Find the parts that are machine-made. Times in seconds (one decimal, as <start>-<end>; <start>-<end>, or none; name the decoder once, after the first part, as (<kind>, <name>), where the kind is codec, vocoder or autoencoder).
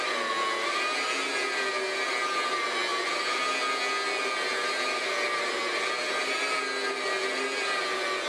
none